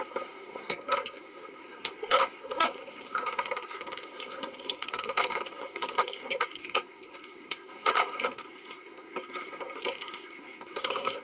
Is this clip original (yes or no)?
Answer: no